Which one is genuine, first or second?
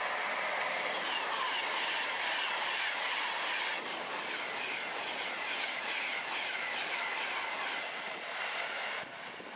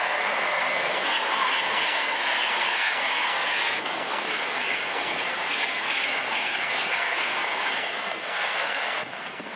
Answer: first